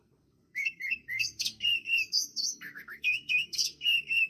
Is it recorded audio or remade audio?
remade